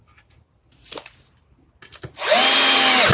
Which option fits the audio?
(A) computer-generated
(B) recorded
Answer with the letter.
B